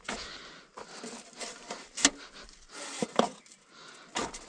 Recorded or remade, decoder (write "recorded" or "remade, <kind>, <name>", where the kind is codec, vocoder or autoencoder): recorded